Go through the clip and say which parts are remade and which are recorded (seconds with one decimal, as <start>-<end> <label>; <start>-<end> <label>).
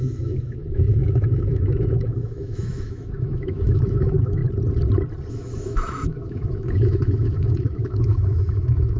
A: 0.0-4.4 remade; 4.4-5.3 recorded; 5.3-9.0 remade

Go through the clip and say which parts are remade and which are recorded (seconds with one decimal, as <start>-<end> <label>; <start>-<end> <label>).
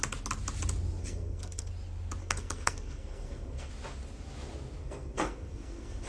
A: 0.0-1.0 recorded; 1.0-1.7 remade; 1.7-2.2 recorded; 2.2-3.7 remade; 3.7-4.8 recorded; 4.8-6.1 remade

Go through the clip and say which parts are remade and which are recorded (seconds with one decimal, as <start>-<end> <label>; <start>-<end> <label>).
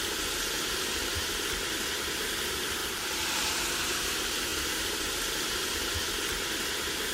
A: 0.0-7.1 recorded